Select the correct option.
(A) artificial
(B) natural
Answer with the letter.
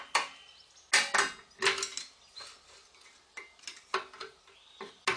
B